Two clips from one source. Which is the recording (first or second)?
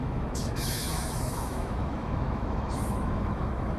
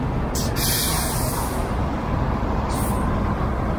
second